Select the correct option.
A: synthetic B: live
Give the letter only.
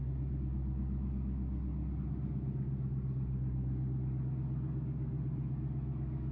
B